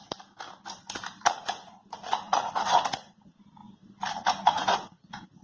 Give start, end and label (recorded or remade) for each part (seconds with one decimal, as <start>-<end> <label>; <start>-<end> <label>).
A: 0.0-1.2 recorded; 1.2-3.6 remade; 3.6-4.1 recorded; 4.1-5.4 remade